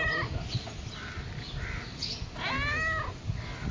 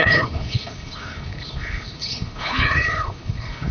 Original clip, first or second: first